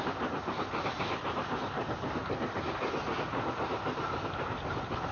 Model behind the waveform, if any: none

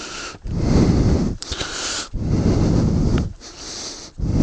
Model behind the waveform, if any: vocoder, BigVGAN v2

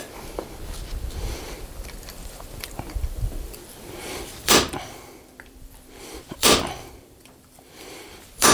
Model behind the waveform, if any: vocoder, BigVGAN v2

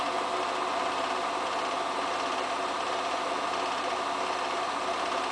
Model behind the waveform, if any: none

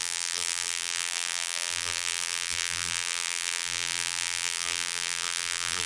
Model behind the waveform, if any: vocoder, BigVGAN v2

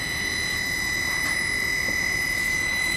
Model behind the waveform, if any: vocoder, BigVGAN v2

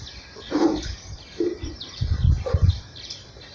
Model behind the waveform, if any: none